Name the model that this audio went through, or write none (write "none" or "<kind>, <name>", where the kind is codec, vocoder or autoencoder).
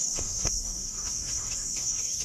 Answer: codec, DAC